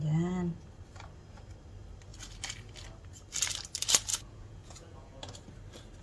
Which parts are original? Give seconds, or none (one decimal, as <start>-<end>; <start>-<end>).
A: 0.0-4.1; 5.1-6.0